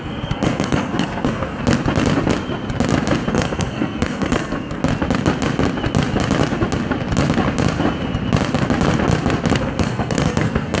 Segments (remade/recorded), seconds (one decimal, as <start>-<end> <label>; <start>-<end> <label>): 0.0-1.6 remade; 1.6-3.3 recorded; 3.3-4.8 remade; 4.8-9.6 recorded; 9.6-10.8 remade